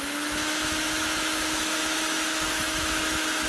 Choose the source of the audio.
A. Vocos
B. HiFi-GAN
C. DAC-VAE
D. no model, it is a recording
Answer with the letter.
C